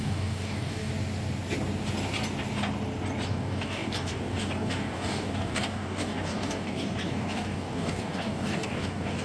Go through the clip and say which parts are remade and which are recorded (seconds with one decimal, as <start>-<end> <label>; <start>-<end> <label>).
0.0-0.9 remade; 0.9-3.3 recorded; 3.3-9.2 remade